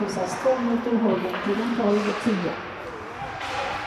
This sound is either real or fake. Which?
real